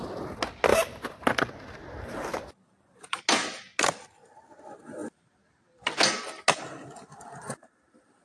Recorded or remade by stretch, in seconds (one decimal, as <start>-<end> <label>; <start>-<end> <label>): 0.0-0.7 recorded; 0.7-3.2 remade; 3.2-8.2 recorded